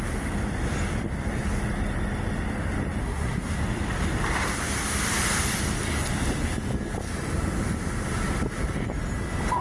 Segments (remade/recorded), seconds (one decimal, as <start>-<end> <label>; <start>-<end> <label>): 0.0-3.0 recorded; 3.0-3.6 remade; 3.6-9.6 recorded